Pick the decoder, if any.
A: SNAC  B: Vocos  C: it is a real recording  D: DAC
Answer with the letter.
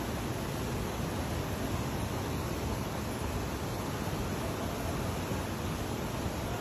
C